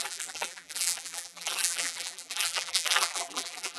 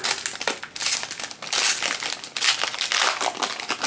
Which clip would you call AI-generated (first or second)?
first